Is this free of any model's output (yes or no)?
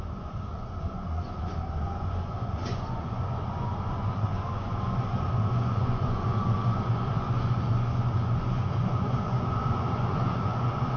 no